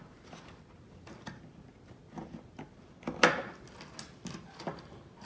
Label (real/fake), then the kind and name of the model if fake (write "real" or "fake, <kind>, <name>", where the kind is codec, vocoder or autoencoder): real